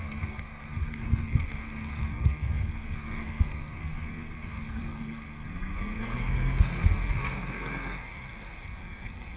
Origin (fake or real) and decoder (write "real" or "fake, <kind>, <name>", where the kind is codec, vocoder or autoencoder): fake, codec, SNAC